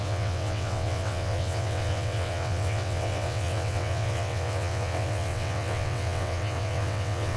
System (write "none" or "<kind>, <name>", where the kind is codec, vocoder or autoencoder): vocoder, WaveNeXt